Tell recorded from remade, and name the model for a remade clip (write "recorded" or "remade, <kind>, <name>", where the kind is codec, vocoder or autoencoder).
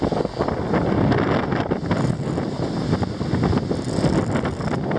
recorded